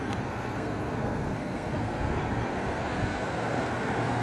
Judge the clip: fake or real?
fake